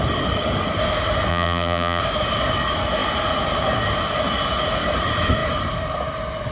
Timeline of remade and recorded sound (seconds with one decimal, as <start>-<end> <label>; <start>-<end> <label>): 0.0-1.3 recorded; 1.3-2.0 remade; 2.0-6.5 recorded